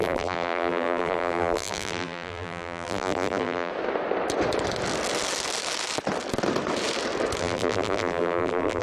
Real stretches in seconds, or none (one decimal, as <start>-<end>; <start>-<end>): 3.7-7.4

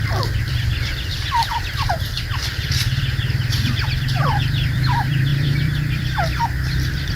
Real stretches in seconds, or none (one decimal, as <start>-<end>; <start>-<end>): none